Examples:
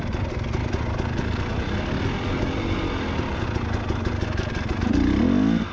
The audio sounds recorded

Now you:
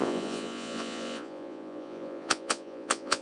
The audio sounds remade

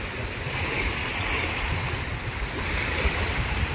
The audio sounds recorded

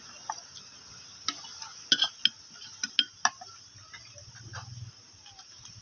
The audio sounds recorded